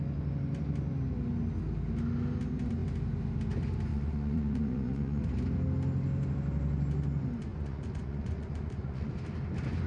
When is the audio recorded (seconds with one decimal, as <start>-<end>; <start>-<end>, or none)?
0.0-3.9; 5.2-7.5; 9.1-9.9